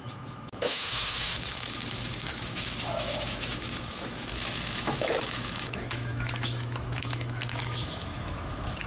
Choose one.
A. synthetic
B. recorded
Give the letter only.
A